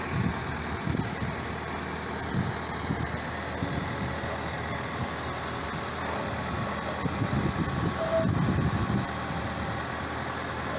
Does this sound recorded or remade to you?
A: recorded